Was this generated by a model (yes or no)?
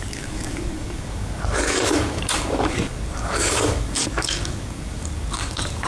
yes